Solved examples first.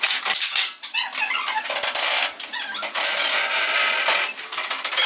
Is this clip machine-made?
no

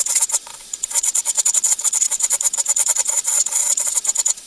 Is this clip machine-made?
yes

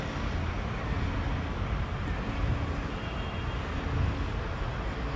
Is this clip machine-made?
no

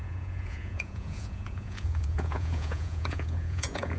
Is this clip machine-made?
yes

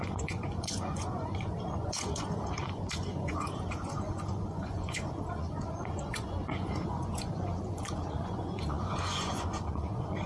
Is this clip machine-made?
yes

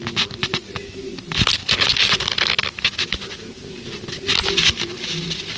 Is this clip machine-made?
no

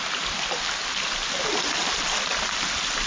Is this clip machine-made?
no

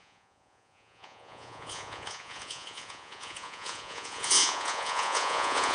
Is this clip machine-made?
yes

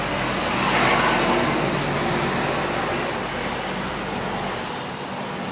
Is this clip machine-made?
no